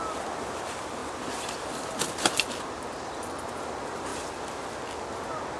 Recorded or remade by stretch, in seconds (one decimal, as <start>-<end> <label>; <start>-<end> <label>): 0.0-1.0 remade; 1.0-2.9 recorded; 2.9-4.1 remade; 4.1-5.6 recorded